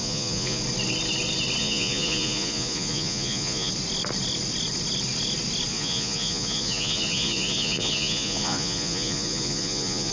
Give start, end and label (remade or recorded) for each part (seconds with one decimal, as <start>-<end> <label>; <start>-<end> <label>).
0.0-0.6 remade; 0.6-1.6 recorded; 1.6-3.7 remade; 3.7-5.7 recorded; 5.7-10.1 remade